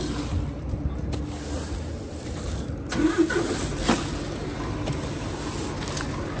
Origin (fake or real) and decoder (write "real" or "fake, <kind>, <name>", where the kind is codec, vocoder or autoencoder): real